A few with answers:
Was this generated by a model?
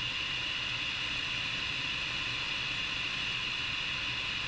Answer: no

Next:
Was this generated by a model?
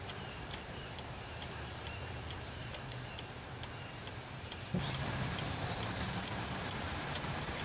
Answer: yes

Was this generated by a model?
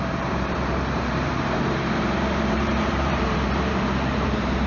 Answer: yes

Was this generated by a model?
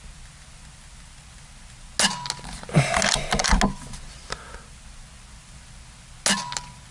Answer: no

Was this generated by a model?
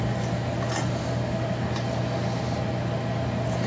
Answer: no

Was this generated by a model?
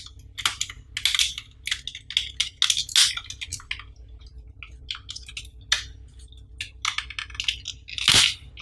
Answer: no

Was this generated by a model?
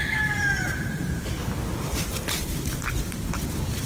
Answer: yes